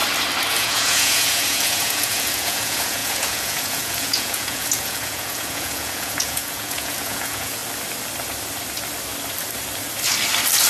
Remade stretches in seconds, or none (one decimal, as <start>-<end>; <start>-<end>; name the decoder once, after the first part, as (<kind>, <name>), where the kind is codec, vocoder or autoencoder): 0.5-7.6 (vocoder, Vocos)